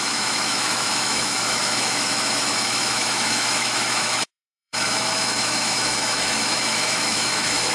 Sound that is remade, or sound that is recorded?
remade